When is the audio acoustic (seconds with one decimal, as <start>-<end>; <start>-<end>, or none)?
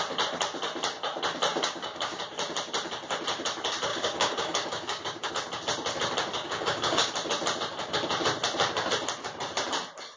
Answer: 0.0-1.5; 2.2-3.9; 5.3-6.3; 7.1-10.2